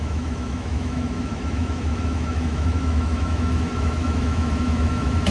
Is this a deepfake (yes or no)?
yes